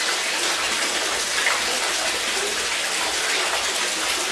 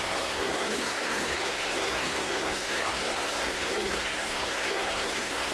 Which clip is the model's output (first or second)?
second